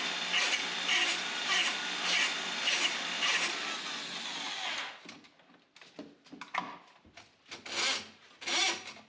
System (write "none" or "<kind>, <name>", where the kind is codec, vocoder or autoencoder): none